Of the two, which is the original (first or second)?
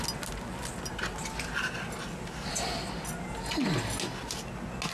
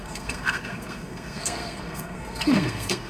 first